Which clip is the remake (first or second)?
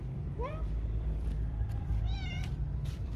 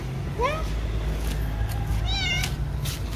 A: first